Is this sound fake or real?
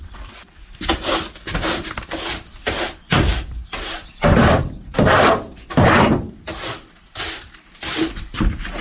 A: fake